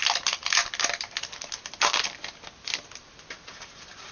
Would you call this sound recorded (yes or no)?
yes